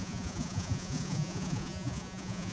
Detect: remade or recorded remade